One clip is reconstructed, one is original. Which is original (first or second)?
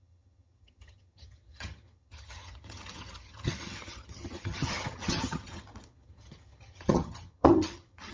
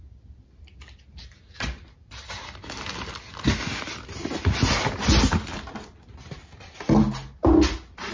second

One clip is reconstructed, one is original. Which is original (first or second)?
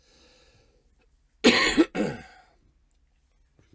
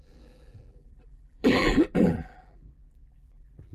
first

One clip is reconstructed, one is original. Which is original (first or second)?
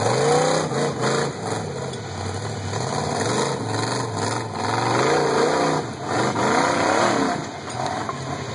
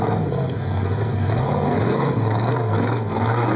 first